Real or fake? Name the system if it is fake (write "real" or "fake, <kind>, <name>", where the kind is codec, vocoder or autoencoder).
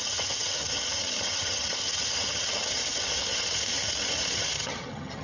fake, vocoder, HiFi-GAN